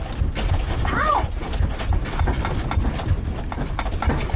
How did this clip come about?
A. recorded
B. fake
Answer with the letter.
A